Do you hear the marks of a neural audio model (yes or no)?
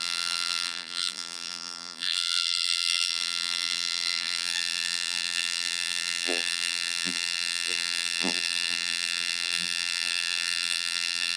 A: yes